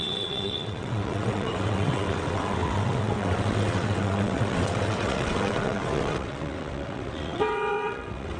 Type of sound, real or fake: fake